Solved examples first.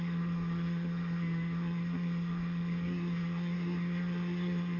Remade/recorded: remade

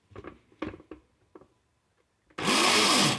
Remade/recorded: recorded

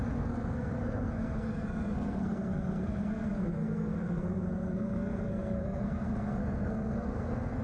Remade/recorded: remade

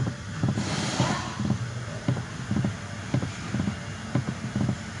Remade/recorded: recorded